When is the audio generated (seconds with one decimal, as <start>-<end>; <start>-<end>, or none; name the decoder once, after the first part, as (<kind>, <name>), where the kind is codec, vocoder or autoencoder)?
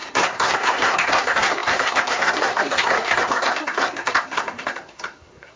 0.0-5.6 (codec, SNAC)